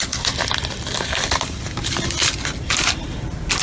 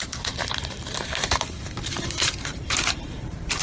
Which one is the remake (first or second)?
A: second